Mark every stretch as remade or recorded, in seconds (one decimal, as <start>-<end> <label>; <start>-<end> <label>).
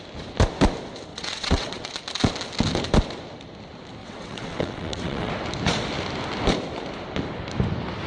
0.0-1.1 recorded; 1.1-1.9 remade; 1.9-4.0 recorded; 4.0-5.3 remade; 5.3-8.1 recorded